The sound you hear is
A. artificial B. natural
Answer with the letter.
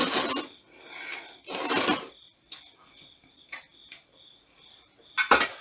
B